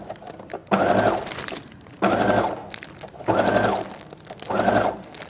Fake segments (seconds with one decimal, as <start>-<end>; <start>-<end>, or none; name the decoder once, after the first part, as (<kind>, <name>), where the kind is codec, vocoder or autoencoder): none